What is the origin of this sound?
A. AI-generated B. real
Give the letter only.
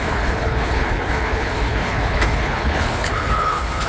A